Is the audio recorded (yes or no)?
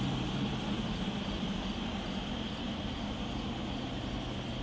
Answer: no